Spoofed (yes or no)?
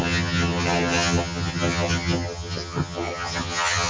yes